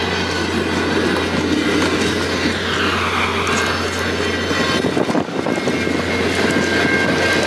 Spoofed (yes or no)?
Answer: no